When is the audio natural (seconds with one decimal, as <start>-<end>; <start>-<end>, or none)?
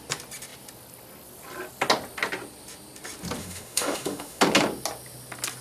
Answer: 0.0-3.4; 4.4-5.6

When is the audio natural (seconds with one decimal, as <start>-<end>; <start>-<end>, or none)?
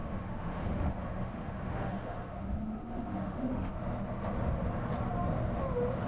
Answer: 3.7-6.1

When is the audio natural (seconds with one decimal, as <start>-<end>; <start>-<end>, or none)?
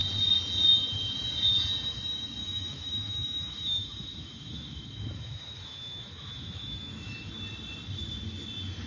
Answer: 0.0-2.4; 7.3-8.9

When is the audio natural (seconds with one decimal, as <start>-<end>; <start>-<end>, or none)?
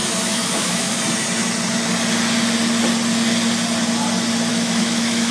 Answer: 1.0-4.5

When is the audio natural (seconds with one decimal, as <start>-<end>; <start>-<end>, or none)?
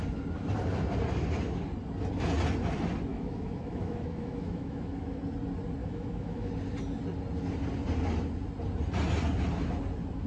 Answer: 0.0-3.1; 5.2-5.8; 6.5-10.3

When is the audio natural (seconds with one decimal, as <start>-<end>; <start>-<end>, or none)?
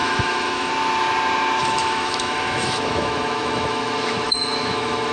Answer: 0.7-1.6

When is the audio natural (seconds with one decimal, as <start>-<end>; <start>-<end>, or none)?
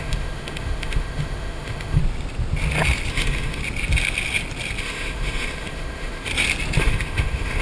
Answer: 2.0-3.1; 3.6-4.8; 6.3-6.8